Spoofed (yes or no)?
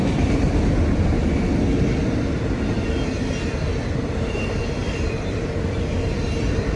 no